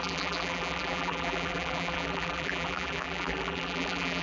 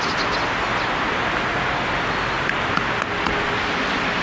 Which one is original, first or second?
second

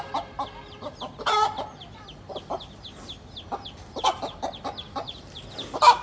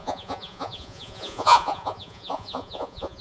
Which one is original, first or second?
first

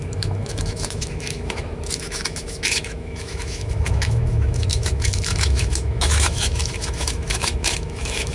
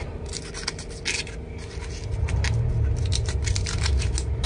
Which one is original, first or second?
second